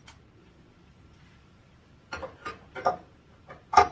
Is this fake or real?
real